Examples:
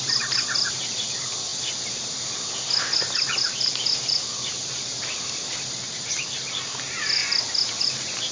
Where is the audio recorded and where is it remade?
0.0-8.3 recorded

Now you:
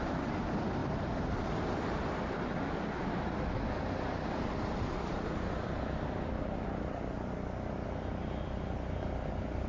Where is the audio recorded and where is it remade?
0.0-9.7 recorded

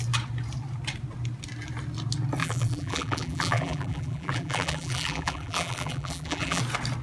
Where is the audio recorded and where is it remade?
0.0-2.4 recorded; 2.4-6.6 remade; 6.6-7.0 recorded

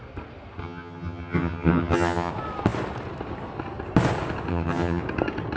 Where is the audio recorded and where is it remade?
0.0-0.6 recorded; 0.6-2.3 remade; 2.3-4.5 recorded; 4.5-5.0 remade; 5.0-5.6 recorded

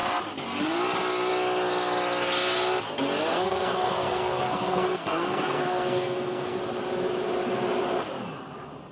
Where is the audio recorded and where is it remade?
0.0-3.3 recorded; 3.3-6.6 remade; 6.6-8.9 recorded

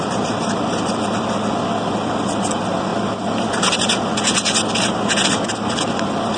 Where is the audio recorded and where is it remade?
0.0-6.4 recorded